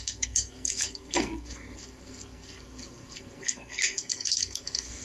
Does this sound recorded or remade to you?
remade